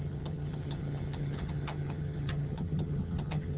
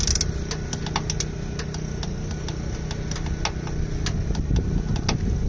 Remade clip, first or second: first